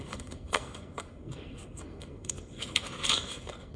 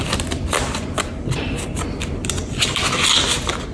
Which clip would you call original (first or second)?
second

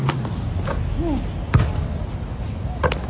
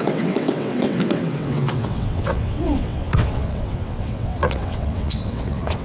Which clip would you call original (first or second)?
first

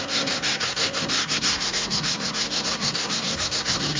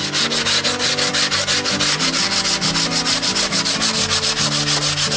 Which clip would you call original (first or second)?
second